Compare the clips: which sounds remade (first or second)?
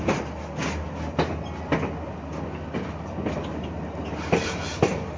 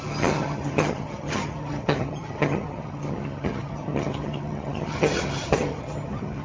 second